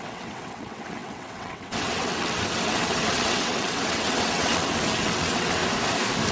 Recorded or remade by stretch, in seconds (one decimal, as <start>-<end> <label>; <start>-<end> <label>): 0.0-5.6 remade; 5.6-6.3 recorded